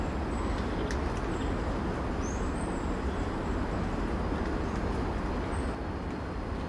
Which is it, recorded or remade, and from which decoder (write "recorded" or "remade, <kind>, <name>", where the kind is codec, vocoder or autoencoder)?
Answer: recorded